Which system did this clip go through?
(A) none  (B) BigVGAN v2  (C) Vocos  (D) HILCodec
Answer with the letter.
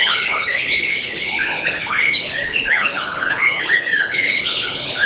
D